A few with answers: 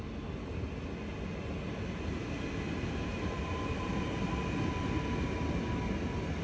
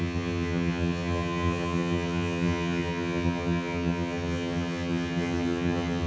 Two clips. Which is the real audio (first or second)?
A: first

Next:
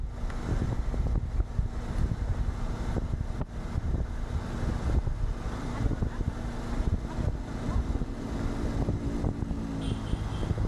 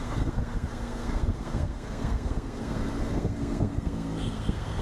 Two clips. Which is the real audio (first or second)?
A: first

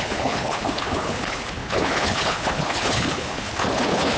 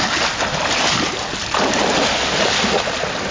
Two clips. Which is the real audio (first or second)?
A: second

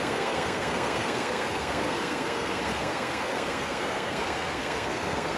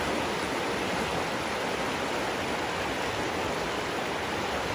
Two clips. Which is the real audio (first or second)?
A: second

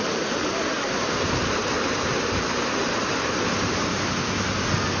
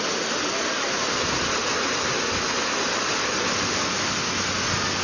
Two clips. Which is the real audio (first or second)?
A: second